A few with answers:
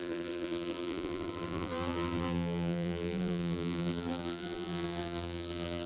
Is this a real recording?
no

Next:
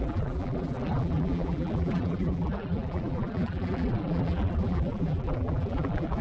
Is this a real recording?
no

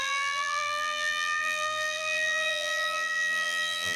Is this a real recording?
no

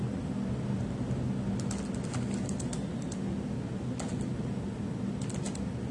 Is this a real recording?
yes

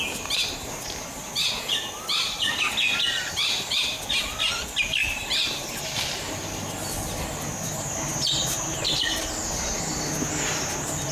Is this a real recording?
yes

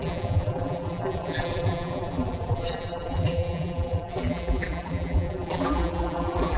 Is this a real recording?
no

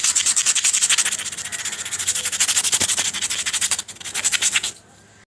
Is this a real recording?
yes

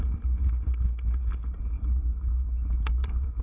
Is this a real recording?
yes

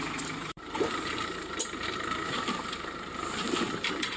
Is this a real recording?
no